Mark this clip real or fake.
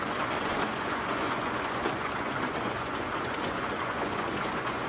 fake